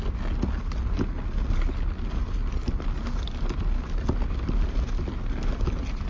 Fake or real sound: real